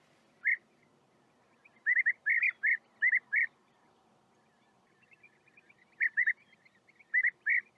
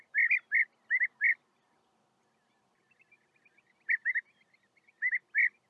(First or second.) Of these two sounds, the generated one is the first